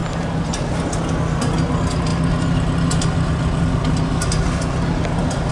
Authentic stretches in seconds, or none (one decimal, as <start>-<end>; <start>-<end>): 0.0-5.5

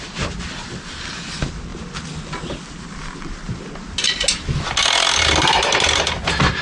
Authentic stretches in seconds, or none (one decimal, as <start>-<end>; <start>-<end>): 0.0-6.6

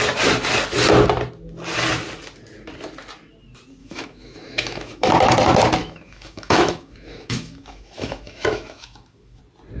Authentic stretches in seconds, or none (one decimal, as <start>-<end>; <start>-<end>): 0.0-3.8; 5.1-5.8; 9.4-9.8

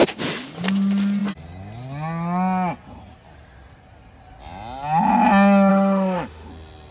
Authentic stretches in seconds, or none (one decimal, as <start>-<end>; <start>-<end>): 0.0-5.7; 6.5-6.9